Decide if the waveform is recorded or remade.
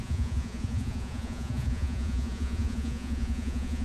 remade